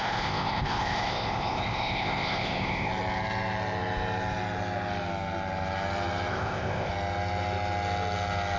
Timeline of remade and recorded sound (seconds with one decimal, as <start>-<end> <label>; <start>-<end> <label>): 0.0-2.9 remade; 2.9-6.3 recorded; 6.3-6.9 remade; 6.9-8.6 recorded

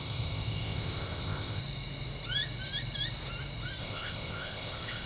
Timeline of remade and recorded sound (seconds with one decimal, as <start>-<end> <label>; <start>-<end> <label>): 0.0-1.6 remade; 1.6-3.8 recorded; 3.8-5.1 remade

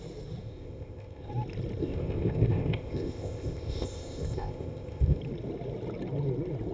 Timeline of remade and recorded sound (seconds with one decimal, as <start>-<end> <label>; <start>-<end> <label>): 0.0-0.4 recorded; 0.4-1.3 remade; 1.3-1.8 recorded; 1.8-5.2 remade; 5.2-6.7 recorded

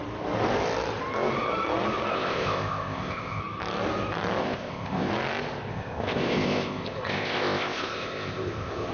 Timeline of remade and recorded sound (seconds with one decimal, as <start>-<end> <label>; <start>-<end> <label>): 0.0-2.1 recorded; 2.1-3.4 remade; 3.4-4.4 recorded; 4.4-5.1 remade; 5.1-5.7 recorded; 5.7-8.9 remade

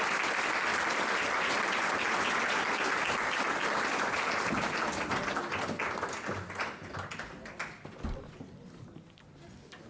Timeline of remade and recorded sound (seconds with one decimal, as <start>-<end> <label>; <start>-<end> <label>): 0.0-9.9 recorded

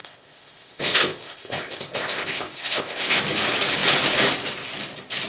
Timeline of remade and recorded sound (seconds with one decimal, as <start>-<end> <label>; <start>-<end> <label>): 0.0-3.2 remade; 3.2-5.3 recorded